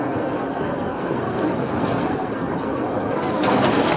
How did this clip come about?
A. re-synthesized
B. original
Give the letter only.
A